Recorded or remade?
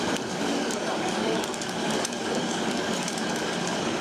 remade